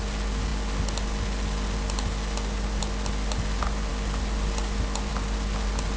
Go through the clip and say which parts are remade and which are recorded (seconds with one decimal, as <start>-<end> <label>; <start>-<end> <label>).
0.0-6.0 recorded